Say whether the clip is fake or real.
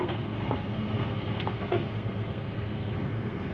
fake